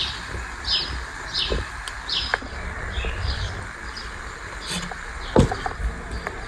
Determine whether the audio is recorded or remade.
recorded